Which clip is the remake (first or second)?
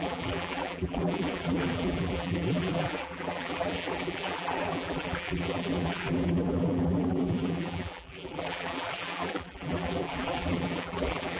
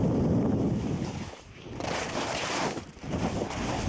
first